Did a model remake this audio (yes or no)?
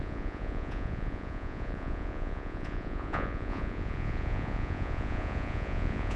yes